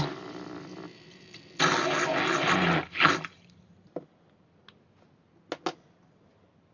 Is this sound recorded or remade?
recorded